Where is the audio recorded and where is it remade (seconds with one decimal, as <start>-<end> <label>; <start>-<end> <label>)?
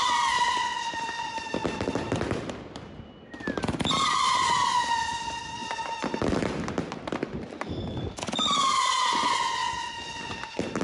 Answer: 0.0-4.2 remade; 4.2-10.8 recorded